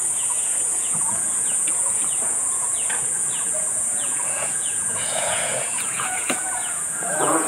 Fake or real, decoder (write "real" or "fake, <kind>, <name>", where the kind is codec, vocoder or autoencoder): fake, vocoder, Vocos